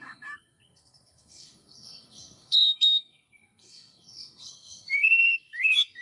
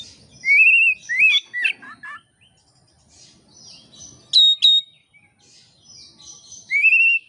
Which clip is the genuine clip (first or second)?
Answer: second